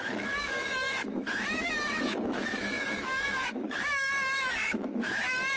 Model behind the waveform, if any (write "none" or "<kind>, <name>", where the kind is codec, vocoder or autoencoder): autoencoder, DAC-VAE